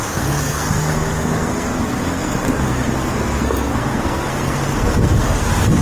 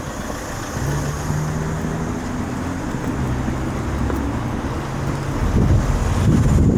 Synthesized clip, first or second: first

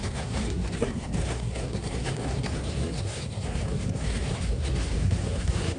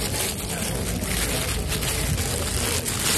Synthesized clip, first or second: first